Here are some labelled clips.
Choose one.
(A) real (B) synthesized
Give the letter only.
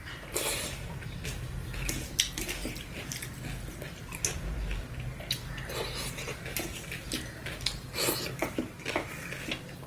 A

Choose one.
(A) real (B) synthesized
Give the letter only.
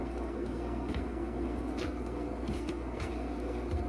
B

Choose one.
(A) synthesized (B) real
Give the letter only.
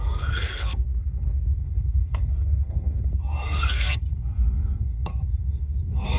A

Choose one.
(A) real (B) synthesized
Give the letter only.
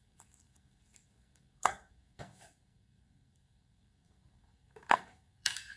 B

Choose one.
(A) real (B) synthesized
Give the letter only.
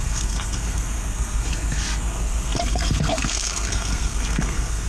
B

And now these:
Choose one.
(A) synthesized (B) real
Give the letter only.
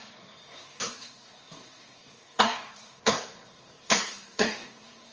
A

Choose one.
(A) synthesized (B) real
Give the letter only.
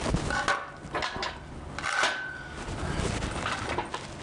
B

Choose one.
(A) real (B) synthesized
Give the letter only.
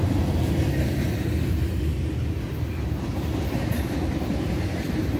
A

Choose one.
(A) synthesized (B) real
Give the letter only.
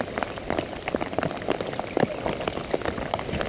B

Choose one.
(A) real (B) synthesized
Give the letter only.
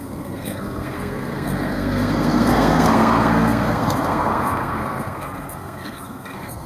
B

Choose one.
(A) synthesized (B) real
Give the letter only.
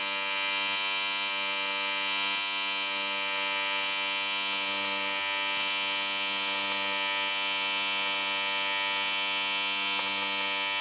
B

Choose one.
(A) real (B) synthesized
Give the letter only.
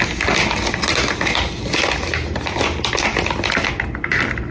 A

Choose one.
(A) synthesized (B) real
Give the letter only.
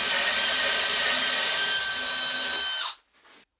B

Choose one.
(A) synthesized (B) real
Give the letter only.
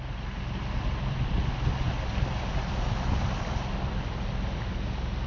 B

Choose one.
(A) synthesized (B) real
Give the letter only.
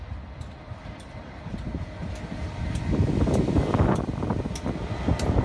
B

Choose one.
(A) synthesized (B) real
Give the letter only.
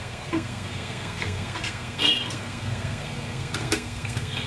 A